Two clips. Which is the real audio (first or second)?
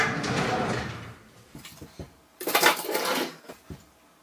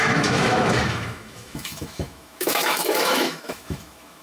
first